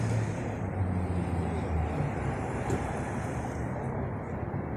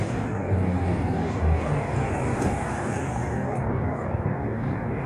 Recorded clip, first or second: first